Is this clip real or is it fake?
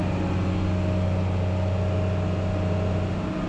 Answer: real